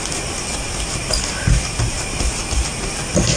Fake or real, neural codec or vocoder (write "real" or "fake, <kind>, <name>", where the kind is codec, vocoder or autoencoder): real